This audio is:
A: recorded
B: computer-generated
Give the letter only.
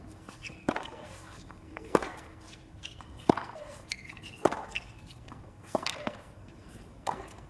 B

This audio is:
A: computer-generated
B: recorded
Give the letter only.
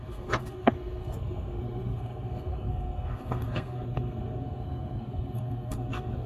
A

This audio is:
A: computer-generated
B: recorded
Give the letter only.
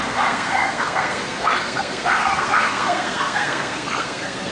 A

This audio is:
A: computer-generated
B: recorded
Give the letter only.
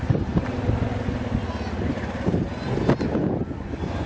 B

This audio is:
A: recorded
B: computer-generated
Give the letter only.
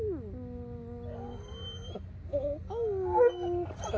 A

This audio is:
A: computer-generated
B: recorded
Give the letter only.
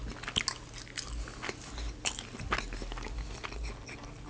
B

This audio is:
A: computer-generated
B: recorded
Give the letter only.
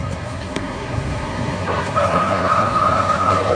A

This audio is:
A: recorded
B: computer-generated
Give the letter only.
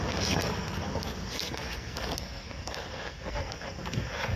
B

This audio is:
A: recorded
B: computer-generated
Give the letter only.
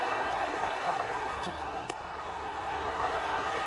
B